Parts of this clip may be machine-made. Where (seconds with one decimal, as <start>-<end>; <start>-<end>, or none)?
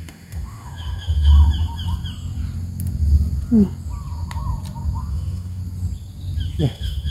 0.0-1.3; 5.1-5.6; 6.6-7.1